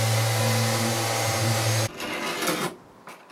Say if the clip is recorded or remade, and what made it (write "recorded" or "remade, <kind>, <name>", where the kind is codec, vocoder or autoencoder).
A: recorded